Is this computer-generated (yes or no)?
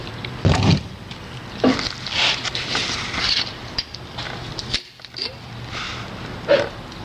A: no